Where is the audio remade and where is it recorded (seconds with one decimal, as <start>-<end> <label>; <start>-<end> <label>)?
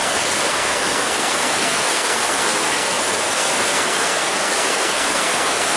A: 0.0-5.8 remade